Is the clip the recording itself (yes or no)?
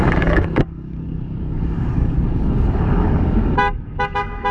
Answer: no